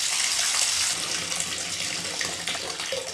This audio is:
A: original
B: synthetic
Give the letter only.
A